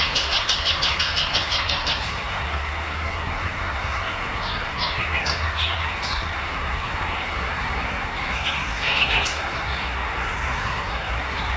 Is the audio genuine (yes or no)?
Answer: no